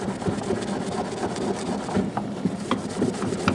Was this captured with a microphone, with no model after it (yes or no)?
yes